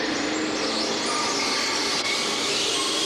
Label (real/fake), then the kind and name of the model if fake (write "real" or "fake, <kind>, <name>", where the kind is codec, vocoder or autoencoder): real